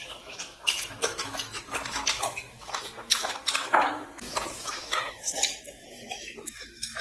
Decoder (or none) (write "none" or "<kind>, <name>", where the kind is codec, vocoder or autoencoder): autoencoder, DAC-VAE